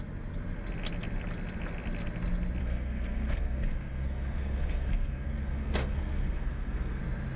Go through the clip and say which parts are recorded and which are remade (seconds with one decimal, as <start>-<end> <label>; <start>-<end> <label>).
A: 0.0-2.6 recorded; 2.6-7.0 remade; 7.0-7.4 recorded